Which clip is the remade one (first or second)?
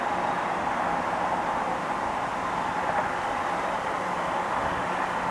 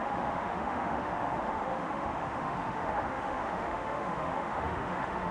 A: second